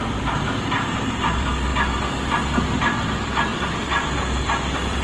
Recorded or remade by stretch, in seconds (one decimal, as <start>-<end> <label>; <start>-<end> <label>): 0.0-1.7 remade; 1.7-3.1 recorded; 3.1-5.0 remade